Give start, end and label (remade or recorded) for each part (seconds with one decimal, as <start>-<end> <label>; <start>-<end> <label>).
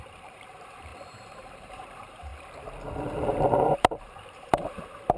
0.0-2.3 remade; 2.3-2.9 recorded; 2.9-5.2 remade